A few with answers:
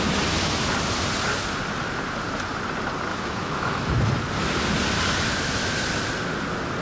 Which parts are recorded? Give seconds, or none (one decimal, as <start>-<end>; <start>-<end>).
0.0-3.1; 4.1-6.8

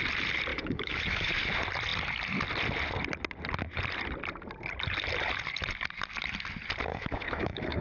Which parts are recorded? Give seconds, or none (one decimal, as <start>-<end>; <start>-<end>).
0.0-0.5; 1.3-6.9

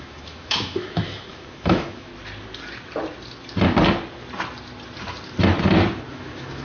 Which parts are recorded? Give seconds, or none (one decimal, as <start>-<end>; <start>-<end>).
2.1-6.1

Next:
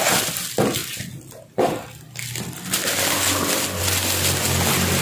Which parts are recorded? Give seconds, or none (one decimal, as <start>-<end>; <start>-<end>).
0.0-5.0

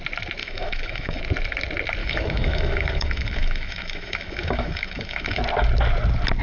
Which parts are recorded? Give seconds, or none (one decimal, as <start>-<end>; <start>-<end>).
0.0-0.4; 1.2-2.0; 5.4-6.4